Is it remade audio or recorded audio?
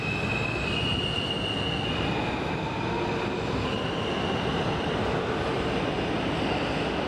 recorded